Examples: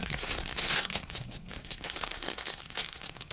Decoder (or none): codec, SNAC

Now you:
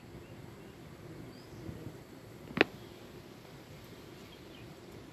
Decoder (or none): none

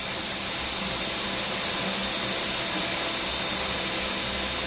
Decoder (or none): none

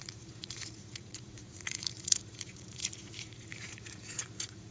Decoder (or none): vocoder, Vocos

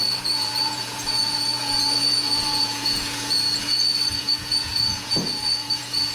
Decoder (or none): vocoder, Vocos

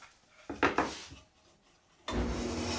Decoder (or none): none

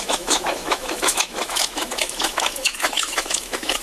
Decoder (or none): autoencoder, DAC-VAE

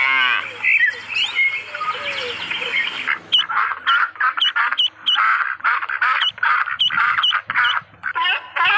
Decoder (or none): none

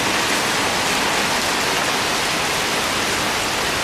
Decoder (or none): none